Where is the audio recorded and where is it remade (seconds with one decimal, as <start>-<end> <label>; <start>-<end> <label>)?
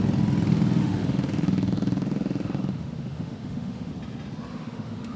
0.0-0.8 recorded; 0.8-3.9 remade; 3.9-4.5 recorded; 4.5-5.2 remade